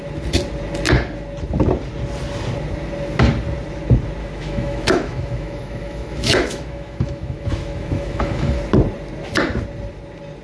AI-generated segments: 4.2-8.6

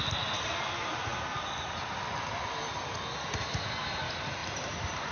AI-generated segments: 4.4-5.1

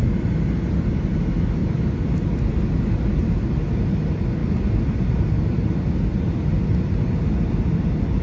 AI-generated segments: none